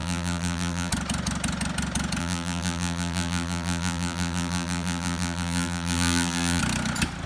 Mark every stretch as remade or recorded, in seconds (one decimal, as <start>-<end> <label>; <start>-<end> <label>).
0.0-0.9 remade; 0.9-2.2 recorded; 2.2-6.6 remade; 6.6-7.3 recorded